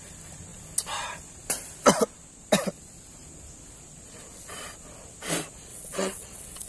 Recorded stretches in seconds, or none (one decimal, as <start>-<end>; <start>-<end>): 0.0-5.7